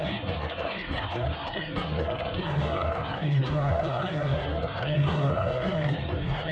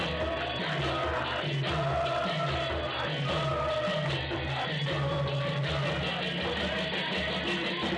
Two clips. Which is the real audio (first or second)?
second